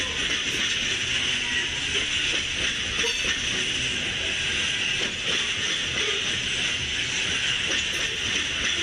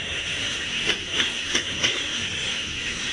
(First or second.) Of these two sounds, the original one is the first